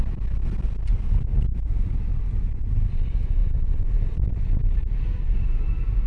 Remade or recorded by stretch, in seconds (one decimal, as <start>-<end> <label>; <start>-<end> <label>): 0.0-3.4 recorded; 3.4-4.3 remade; 4.3-6.1 recorded